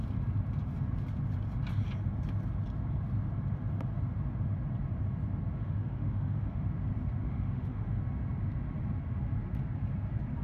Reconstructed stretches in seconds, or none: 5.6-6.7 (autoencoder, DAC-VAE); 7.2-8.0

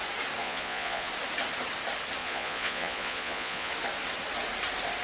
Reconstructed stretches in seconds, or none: 0.4-1.1 (vocoder, Vocos); 2.2-3.7

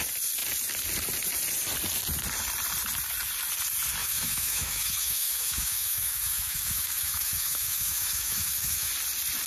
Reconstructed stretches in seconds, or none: 4.0-8.9 (autoencoder, DAC-VAE)

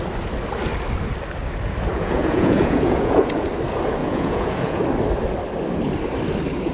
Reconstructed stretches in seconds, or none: 1.9-3.5 (vocoder, Vocos); 4.0-4.8

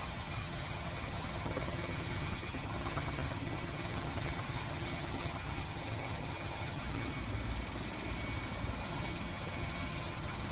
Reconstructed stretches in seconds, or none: 0.0-7.2 (vocoder, HiFi-GAN); 8.9-10.5

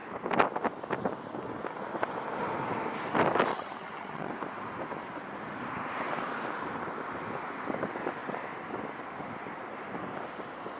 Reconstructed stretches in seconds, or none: 3.5-4.3 (vocoder, HiFi-GAN)